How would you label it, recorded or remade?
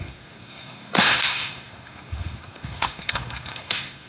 remade